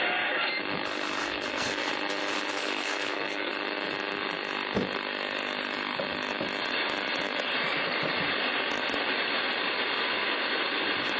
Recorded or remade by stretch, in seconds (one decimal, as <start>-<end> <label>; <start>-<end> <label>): 0.0-1.2 recorded; 1.2-1.9 remade; 1.9-2.6 recorded; 2.6-3.5 remade; 3.5-11.2 recorded